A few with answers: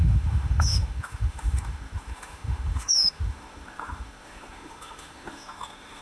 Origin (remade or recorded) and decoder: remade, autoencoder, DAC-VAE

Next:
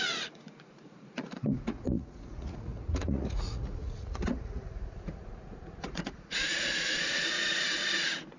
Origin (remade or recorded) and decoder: remade, vocoder, Vocos